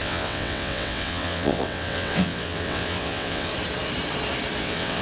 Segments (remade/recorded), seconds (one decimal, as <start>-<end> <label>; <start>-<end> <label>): 0.0-3.5 remade; 3.5-4.6 recorded; 4.6-5.0 remade